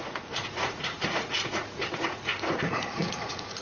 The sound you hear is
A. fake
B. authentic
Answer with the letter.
A